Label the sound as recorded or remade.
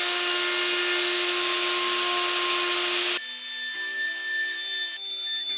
recorded